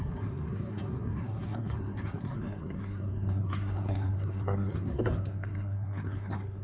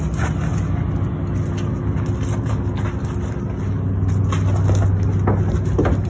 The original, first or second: second